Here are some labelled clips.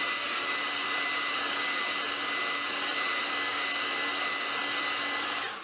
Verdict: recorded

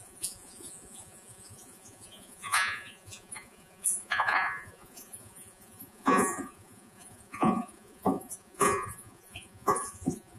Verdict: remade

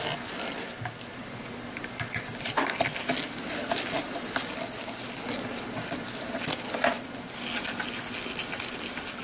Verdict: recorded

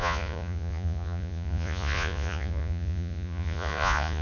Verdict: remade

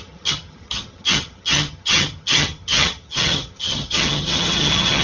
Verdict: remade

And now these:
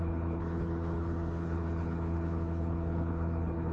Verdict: remade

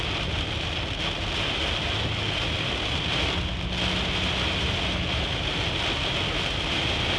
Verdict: recorded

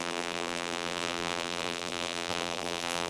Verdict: remade